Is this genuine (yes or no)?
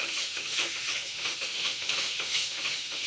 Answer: no